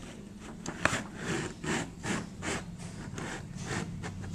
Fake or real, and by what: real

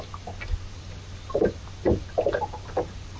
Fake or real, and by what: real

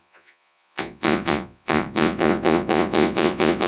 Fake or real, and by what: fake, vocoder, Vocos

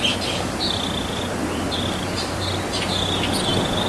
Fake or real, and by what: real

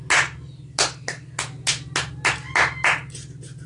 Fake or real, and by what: real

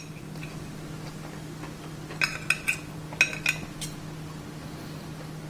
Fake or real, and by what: real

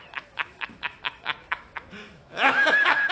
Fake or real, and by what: fake, autoencoder, DAC-VAE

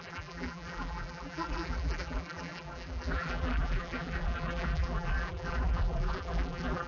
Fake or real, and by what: fake, vocoder, BigVGAN v2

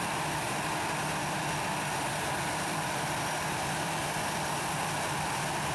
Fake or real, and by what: fake, vocoder, BigVGAN v2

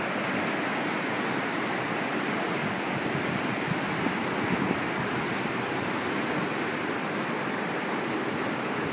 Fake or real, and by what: real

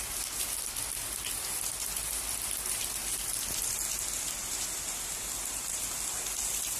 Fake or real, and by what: real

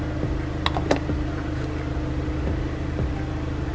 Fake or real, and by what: real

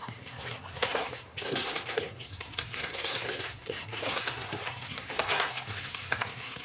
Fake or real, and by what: fake, codec, SNAC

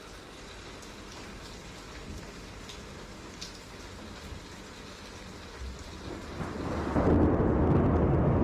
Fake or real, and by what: real